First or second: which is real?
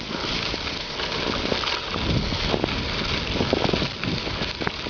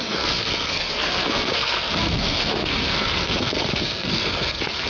first